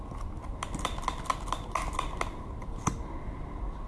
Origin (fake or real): real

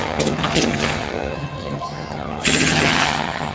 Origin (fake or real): fake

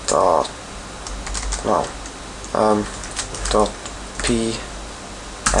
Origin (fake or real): real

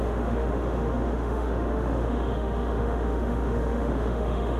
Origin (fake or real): fake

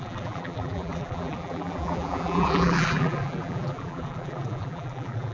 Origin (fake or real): fake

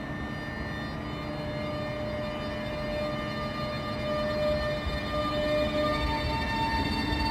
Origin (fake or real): real